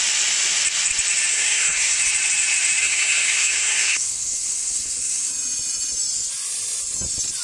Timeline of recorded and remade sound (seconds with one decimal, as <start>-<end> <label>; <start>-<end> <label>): 0.0-1.3 recorded; 1.3-2.0 remade; 2.0-2.8 recorded; 2.8-5.3 remade; 5.3-7.4 recorded